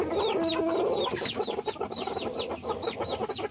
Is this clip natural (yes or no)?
yes